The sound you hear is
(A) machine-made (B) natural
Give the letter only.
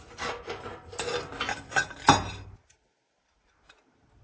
B